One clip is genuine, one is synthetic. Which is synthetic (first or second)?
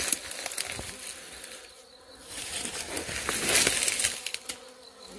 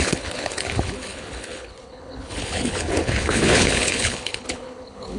second